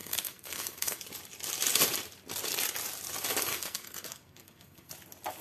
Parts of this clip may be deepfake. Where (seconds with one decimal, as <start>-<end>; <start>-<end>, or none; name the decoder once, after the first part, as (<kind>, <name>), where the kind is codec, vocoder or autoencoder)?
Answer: 0.0-1.0 (codec, SNAC); 3.5-4.9